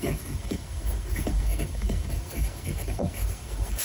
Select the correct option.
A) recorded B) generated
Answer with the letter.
B